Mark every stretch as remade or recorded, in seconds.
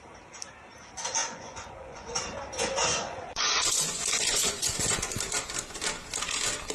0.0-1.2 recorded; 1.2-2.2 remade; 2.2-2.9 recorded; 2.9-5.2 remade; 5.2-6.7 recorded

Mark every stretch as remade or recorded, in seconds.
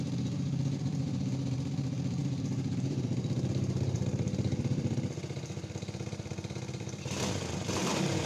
0.0-8.3 remade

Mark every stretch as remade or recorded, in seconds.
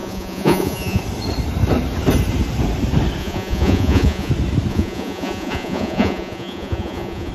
0.0-1.0 remade; 1.0-3.2 recorded; 3.2-4.3 remade; 4.3-4.7 recorded; 4.7-7.3 remade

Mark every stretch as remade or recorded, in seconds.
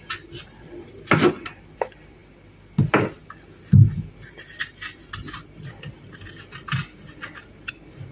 0.0-8.1 recorded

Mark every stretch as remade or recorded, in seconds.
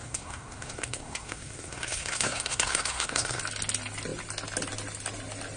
0.0-3.4 remade; 3.4-5.6 recorded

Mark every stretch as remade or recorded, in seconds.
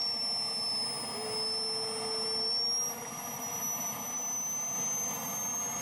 0.0-5.8 recorded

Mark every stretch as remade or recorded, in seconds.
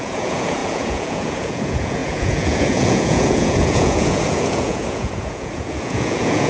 0.0-6.5 remade